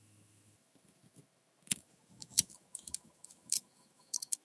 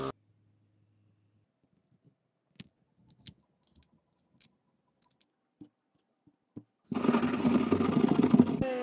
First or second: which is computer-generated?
first